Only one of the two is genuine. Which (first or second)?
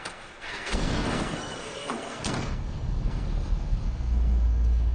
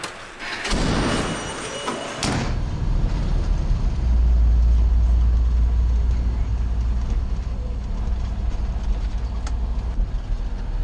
second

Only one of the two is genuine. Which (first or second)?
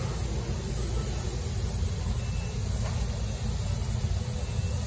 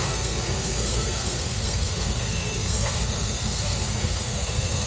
first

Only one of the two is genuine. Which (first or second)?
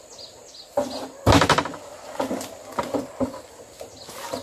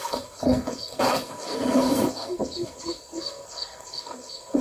first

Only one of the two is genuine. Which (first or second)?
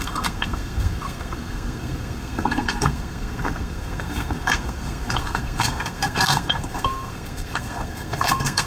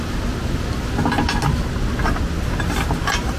second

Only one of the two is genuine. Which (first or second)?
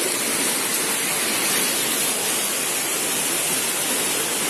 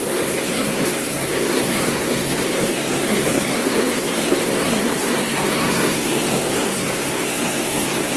first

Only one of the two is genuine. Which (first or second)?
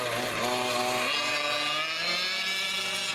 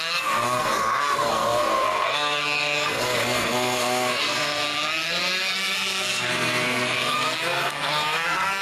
first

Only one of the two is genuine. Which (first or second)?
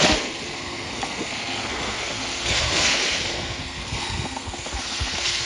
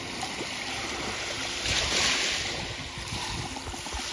second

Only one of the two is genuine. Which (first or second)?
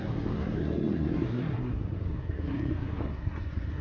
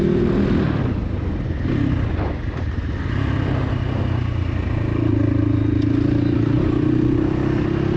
second